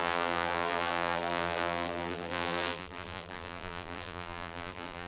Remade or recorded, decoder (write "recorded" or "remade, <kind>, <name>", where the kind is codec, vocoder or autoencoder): remade, vocoder, BigVGAN v2